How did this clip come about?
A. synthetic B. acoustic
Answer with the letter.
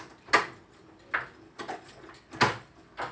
B